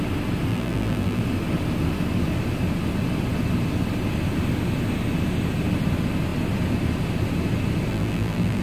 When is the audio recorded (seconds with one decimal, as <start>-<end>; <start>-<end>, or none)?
0.0-0.5; 1.2-7.9